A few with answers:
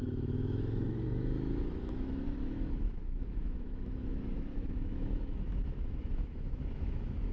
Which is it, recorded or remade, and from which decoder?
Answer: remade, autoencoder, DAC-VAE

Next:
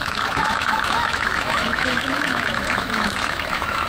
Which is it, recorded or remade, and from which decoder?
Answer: remade, autoencoder, DAC-VAE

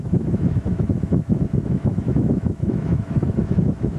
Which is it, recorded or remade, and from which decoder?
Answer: remade, autoencoder, DAC-VAE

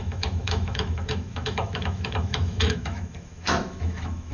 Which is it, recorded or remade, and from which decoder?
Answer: remade, autoencoder, DAC-VAE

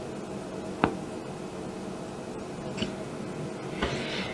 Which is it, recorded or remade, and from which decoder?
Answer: recorded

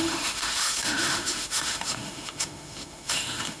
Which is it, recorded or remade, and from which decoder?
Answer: remade, autoencoder, DAC-VAE